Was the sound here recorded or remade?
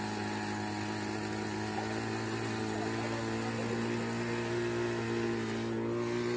recorded